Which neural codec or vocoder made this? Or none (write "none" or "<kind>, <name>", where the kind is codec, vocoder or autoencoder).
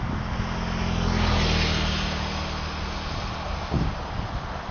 none